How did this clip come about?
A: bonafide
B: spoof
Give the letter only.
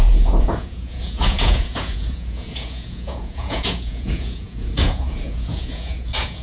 B